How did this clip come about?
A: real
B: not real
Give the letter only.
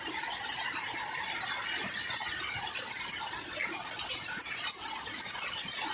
A